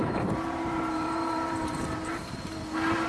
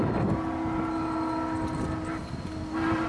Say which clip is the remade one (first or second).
first